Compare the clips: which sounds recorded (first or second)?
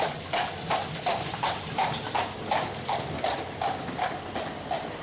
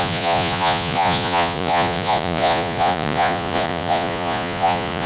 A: first